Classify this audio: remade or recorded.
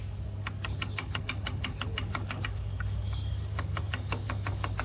remade